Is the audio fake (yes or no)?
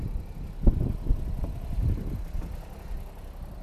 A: no